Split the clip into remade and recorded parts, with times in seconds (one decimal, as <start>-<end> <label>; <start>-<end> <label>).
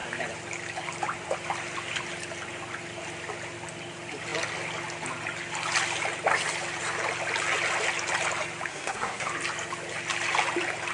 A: 0.0-8.7 recorded; 8.7-9.3 remade; 9.3-10.9 recorded